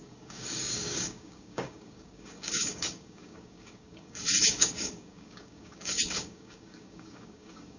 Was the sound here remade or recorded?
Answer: remade